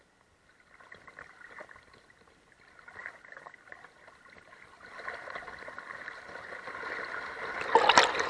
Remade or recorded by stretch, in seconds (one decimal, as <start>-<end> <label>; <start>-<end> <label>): 0.0-8.3 remade